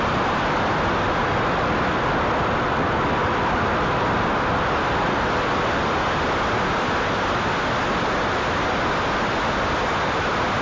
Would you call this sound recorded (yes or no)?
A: yes